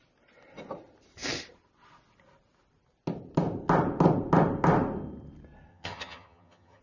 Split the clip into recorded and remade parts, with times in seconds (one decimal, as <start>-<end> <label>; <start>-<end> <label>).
0.0-5.7 recorded; 5.7-6.8 remade